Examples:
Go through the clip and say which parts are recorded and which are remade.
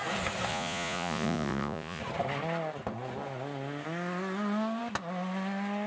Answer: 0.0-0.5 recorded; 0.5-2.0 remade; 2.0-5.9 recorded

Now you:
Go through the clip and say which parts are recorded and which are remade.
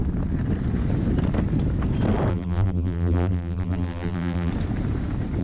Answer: 0.0-2.3 recorded; 2.3-4.5 remade; 4.5-5.4 recorded